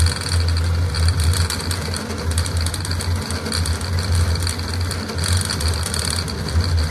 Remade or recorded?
recorded